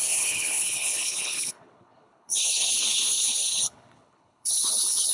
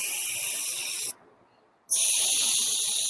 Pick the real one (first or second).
second